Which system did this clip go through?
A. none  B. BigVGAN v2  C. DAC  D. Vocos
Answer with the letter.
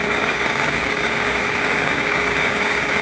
C